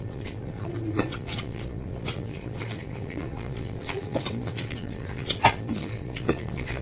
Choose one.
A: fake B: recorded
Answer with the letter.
A